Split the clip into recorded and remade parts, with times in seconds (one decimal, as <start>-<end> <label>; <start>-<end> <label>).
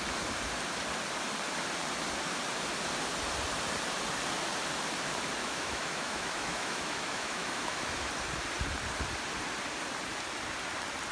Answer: 0.0-5.4 recorded; 5.4-8.1 remade; 8.1-11.1 recorded